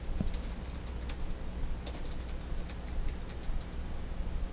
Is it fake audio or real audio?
real